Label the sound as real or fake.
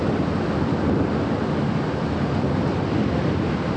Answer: real